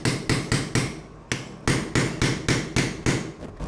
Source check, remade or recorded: recorded